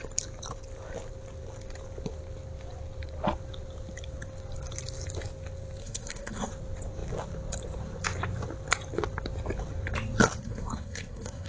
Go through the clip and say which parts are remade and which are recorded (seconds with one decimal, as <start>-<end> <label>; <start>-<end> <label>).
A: 0.0-5.8 recorded; 5.8-6.5 remade; 6.5-10.4 recorded; 10.4-11.5 remade